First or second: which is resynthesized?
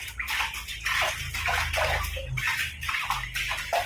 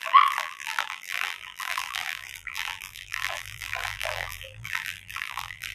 second